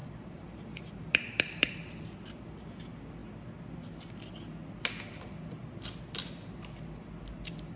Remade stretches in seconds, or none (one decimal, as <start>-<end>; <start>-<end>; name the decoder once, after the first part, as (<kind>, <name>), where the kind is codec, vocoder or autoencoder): 0.0-1.7 (vocoder, BigVGAN v2)